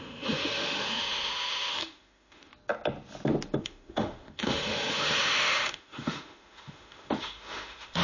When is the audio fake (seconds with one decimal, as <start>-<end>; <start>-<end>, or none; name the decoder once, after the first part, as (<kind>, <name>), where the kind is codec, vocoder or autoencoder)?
0.0-2.5 (autoencoder, DAC-VAE); 3.6-8.0